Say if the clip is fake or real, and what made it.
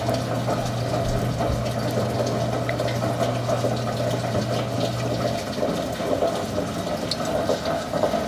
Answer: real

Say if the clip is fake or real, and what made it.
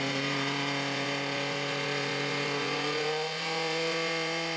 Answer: fake, vocoder, Vocos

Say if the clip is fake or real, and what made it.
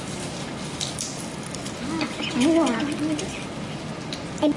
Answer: real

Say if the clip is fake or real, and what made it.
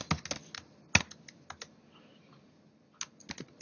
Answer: real